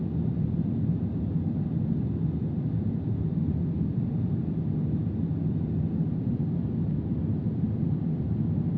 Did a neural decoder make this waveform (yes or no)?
no